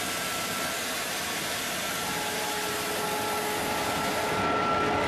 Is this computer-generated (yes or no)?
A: no